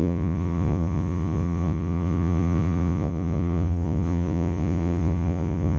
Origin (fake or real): fake